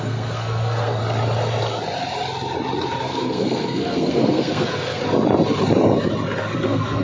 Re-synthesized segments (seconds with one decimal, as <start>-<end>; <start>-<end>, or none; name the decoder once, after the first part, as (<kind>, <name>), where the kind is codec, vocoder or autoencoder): 0.0-1.0 (codec, SNAC); 3.0-5.0; 6.4-7.0